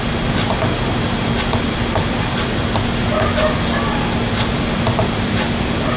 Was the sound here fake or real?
real